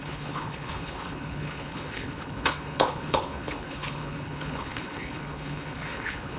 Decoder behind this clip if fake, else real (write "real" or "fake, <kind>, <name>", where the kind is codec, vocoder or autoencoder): fake, codec, HILCodec